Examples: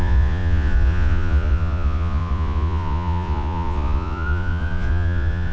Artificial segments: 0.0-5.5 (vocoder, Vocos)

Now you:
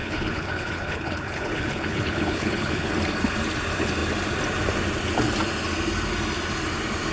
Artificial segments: 0.0-2.9 (codec, HILCodec)

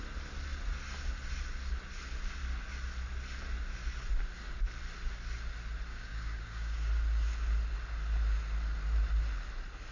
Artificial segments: 5.9-6.9 (codec, DAC)